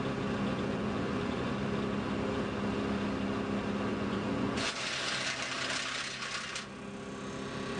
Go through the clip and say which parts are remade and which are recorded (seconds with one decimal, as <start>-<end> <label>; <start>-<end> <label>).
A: 0.0-0.5 recorded; 0.5-1.5 remade; 1.5-3.9 recorded; 3.9-4.7 remade; 4.7-7.8 recorded